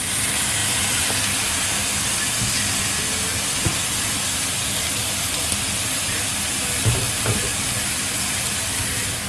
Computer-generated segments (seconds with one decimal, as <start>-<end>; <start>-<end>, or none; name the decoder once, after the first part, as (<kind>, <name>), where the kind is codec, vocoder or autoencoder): none